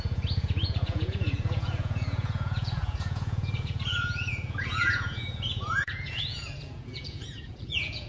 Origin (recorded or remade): remade